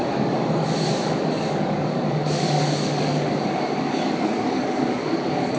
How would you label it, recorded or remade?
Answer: remade